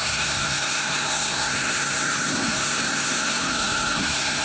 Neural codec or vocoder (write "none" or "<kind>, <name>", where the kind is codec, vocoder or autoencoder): codec, SNAC